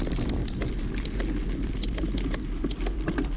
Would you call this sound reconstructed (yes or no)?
no